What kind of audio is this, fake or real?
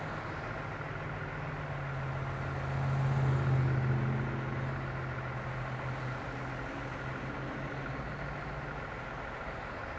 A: real